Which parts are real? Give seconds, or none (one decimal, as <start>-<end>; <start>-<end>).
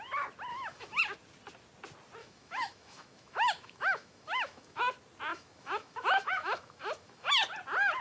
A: 0.0-0.5; 1.0-2.2; 4.8-5.3; 7.3-8.0